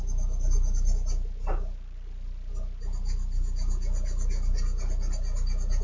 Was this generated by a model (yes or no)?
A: no